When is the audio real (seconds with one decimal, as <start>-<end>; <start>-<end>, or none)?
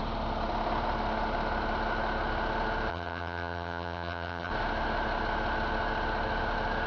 0.0-2.9; 4.5-6.9